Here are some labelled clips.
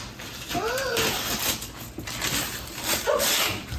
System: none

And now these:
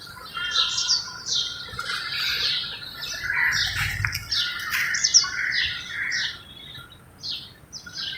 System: none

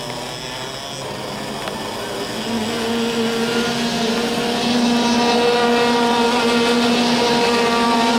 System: none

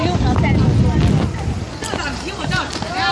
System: none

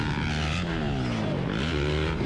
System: none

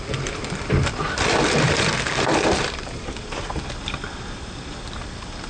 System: vocoder, BigVGAN v2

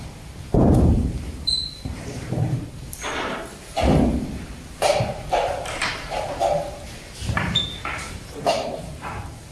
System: vocoder, BigVGAN v2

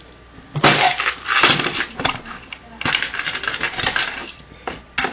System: none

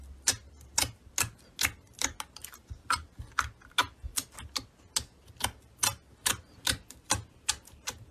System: none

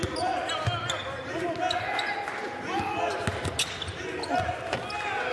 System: none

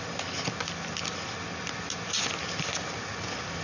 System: none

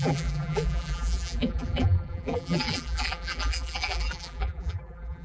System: vocoder, BigVGAN v2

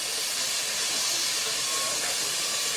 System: none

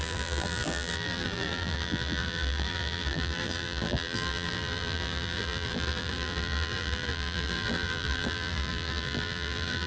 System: vocoder, BigVGAN v2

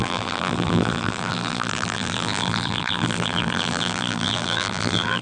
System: vocoder, BigVGAN v2